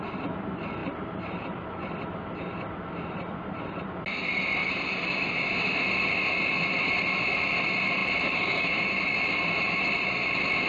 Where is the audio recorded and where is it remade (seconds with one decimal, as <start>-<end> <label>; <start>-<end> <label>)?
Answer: 0.0-0.8 recorded; 0.8-1.9 remade; 1.9-4.6 recorded; 4.6-5.3 remade; 5.3-8.0 recorded; 8.0-9.8 remade; 9.8-10.7 recorded